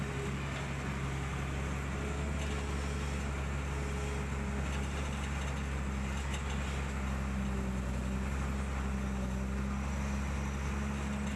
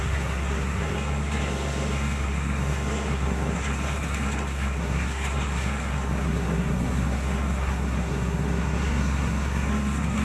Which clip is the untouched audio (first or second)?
first